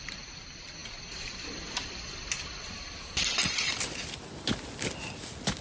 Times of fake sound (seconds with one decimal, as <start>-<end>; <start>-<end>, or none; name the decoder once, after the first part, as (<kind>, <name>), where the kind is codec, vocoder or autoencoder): none